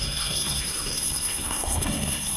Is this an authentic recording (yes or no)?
no